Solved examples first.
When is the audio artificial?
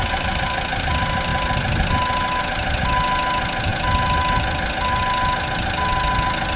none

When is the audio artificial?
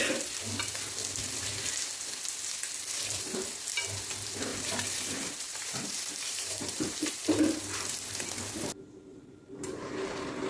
4.5-7.1 (vocoder, BigVGAN v2); 9.1-10.5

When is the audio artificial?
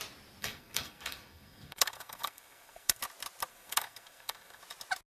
0.4-3.0 (codec, SNAC); 3.5-4.6